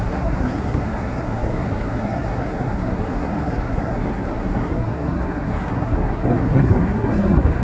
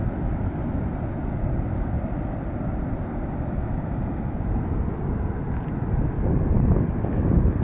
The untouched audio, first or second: second